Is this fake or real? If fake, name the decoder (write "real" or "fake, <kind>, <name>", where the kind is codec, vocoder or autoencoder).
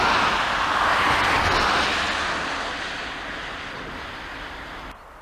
real